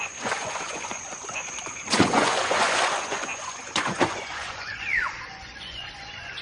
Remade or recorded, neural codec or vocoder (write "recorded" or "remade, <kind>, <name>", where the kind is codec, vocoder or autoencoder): remade, vocoder, Vocos